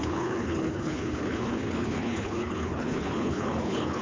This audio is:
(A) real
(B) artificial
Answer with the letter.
B